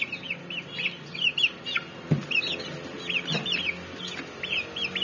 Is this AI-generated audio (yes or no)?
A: no